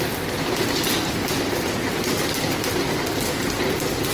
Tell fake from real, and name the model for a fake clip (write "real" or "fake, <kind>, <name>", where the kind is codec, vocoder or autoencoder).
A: real